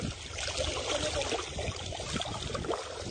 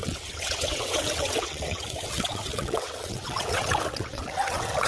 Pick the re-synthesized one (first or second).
second